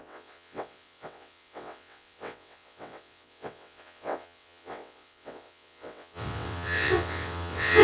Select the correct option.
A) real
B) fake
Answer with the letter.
B